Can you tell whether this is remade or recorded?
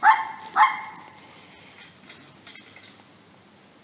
recorded